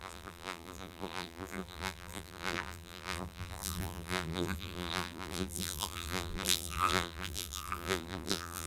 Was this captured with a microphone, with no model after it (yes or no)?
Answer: no